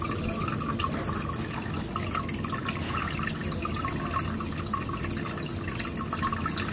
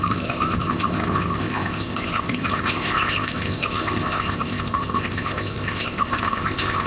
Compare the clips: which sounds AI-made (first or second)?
second